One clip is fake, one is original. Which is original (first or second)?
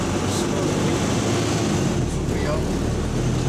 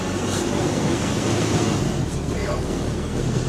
first